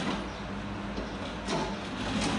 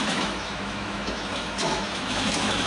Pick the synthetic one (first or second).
second